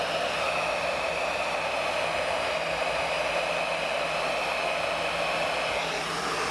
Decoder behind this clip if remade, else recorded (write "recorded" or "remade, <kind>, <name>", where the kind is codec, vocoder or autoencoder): recorded